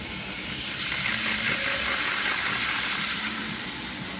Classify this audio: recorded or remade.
remade